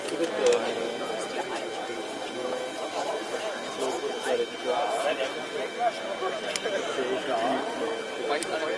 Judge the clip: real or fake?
real